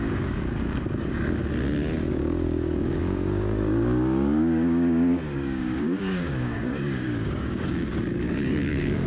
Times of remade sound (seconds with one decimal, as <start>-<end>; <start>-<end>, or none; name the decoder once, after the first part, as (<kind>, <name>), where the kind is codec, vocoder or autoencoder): 0.0-1.4 (codec, DAC); 2.1-9.1